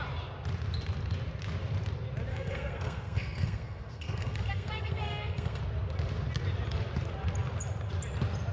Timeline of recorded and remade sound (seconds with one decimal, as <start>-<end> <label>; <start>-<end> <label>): 0.0-2.3 recorded; 2.3-5.6 remade; 5.6-8.5 recorded